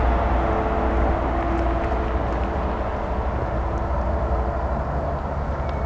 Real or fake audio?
real